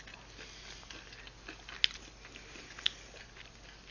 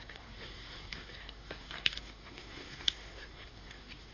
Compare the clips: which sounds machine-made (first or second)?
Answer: second